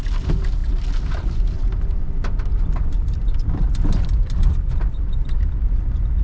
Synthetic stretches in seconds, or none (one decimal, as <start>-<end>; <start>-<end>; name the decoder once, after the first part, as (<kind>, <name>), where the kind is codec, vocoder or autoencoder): none